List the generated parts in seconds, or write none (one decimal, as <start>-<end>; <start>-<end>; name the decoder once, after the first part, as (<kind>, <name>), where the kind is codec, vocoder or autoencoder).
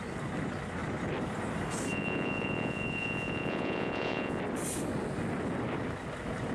1.9-4.4 (vocoder, Vocos)